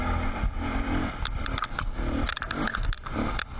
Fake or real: real